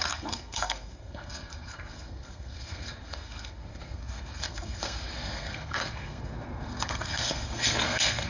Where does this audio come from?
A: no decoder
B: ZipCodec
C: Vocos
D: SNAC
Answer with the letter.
D